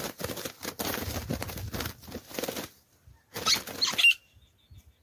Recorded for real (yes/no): yes